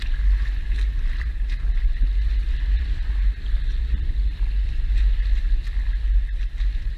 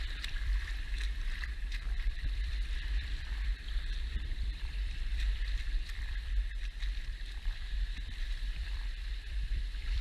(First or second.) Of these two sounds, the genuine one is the first